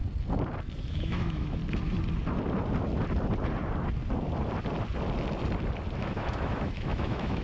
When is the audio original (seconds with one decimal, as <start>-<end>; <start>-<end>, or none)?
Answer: 0.0-0.9; 1.6-6.0